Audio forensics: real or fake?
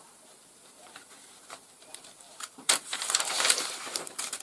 fake